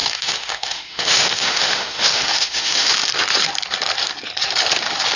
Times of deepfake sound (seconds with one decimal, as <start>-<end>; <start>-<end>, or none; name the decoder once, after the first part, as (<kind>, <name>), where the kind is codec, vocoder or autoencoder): 0.0-3.1 (autoencoder, DAC-VAE)